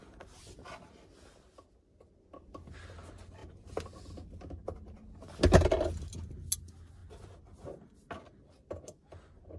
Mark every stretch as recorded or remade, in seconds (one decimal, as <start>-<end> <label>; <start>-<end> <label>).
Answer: 0.0-9.6 recorded